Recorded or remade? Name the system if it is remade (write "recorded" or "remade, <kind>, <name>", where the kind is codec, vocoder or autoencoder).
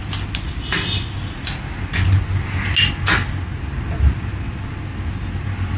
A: recorded